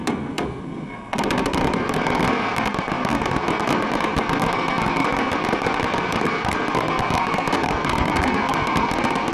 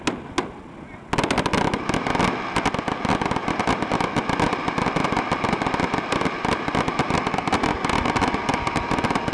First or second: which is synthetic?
first